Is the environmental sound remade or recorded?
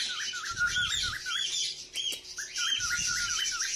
recorded